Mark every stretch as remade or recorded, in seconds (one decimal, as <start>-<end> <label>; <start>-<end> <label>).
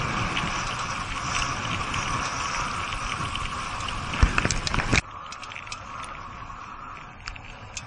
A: 0.0-7.9 recorded